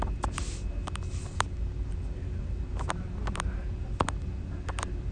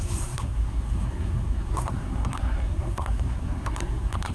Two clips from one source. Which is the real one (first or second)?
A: first